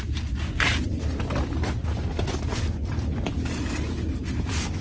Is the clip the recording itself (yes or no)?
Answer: yes